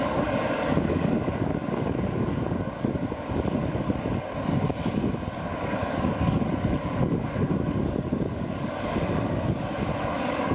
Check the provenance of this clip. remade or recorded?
remade